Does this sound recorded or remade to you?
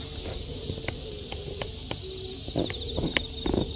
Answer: recorded